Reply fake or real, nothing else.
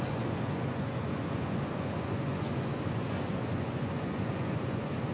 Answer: fake